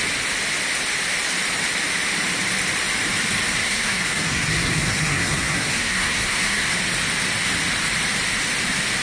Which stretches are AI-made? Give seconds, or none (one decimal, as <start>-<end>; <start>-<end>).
3.6-6.8

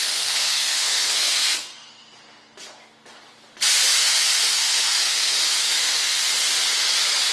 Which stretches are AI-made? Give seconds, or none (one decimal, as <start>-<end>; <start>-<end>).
0.0-1.9; 4.0-6.2